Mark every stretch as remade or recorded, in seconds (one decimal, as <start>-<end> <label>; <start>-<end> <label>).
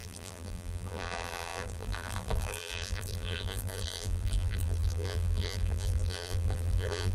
0.0-7.1 remade